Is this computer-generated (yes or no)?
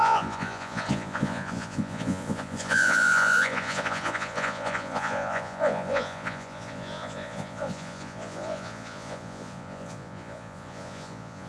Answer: yes